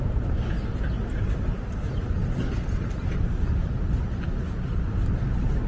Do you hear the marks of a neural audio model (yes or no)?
no